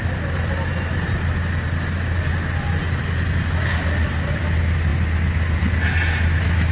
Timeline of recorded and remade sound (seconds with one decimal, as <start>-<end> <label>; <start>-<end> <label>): 0.0-6.7 recorded